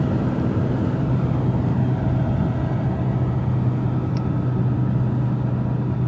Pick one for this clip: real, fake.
real